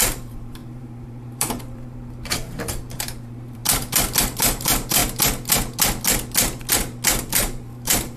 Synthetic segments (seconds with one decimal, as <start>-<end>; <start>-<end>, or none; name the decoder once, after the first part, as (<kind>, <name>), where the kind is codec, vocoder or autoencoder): 0.0-3.6 (vocoder, BigVGAN v2); 4.2-5.0; 7.3-8.2